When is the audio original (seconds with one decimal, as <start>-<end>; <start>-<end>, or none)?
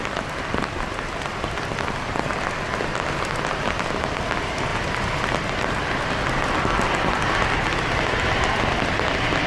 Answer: 0.0-9.5